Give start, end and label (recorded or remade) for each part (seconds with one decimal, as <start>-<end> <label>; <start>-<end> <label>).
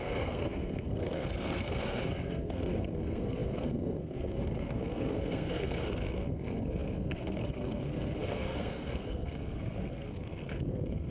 0.0-11.1 remade